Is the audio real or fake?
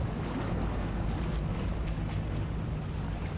real